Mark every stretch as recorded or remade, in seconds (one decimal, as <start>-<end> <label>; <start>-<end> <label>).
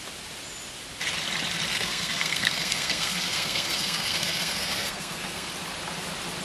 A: 0.0-1.7 recorded; 1.7-5.5 remade; 5.5-6.4 recorded